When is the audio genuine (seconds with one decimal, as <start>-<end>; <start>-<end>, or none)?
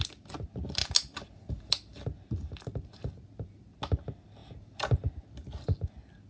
0.0-6.3